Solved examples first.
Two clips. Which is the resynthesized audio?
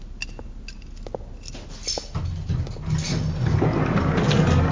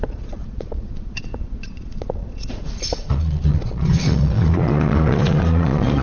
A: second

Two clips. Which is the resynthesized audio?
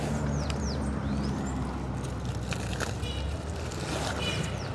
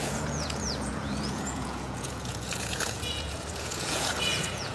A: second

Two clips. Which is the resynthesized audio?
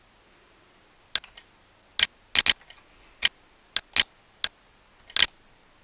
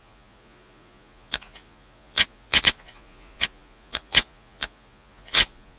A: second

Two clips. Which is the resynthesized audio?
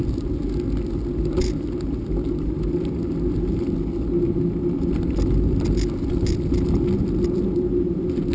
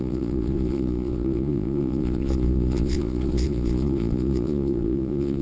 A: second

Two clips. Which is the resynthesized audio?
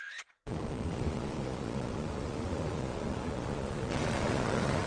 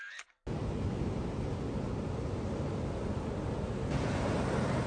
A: first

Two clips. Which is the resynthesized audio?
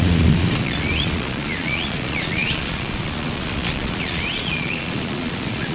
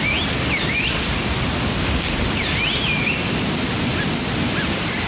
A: first